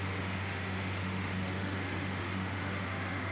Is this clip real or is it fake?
fake